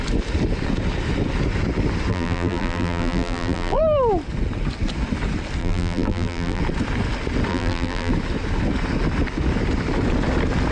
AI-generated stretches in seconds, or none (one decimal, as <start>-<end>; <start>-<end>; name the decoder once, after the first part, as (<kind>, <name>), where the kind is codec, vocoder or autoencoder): 2.1-3.8 (vocoder, BigVGAN v2); 5.6-6.6; 7.5-8.1